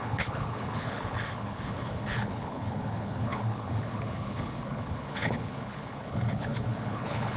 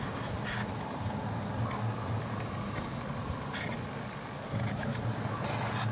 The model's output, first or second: first